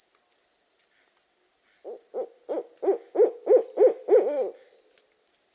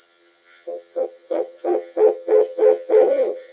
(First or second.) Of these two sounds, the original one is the first